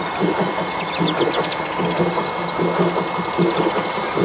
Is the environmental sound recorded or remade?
recorded